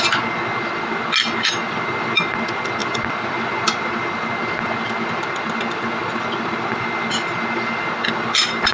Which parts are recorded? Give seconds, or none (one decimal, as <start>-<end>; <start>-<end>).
0.0-8.7